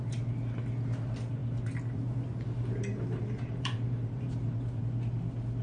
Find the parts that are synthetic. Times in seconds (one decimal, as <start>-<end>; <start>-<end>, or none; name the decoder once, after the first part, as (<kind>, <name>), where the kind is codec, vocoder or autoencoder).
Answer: 1.4-4.8 (vocoder, BigVGAN v2)